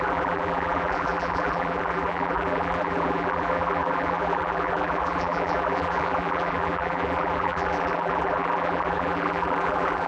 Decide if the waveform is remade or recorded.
remade